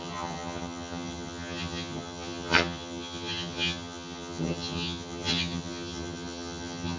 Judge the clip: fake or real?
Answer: fake